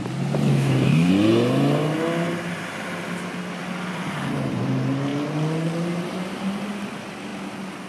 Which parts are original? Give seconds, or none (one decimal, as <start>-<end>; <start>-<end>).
0.0-0.5; 1.1-7.9

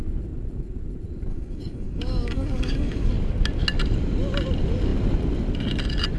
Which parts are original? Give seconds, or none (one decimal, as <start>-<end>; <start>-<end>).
0.0-1.3; 3.1-6.2

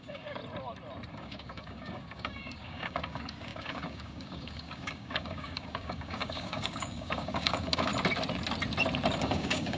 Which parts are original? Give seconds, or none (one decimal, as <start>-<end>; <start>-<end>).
0.4-1.1; 7.9-9.2